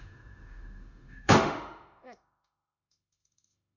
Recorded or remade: remade